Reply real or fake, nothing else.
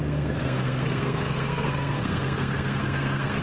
fake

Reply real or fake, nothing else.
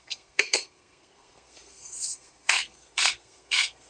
fake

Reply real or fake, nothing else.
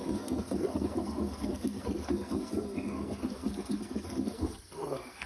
fake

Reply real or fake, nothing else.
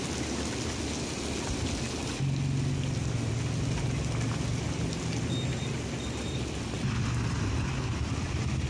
real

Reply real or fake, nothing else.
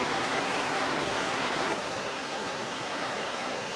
fake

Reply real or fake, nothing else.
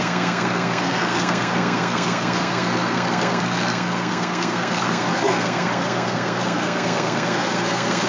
fake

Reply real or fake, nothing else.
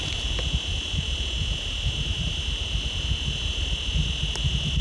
real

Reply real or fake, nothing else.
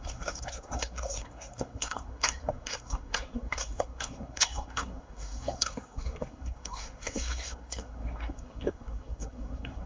fake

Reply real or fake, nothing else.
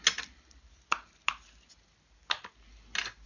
real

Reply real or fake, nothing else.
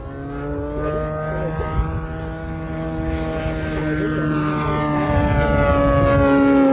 real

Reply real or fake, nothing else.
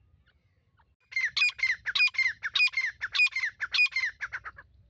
real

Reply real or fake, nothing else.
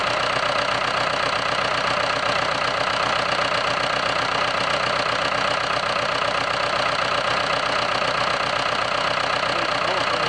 real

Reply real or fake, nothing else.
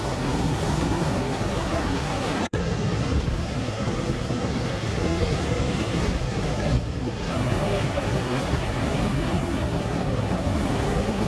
fake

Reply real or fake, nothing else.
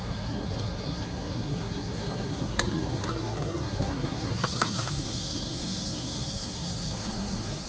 fake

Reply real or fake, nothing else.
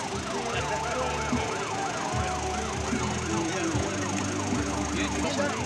real